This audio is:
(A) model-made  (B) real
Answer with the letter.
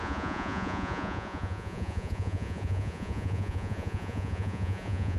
A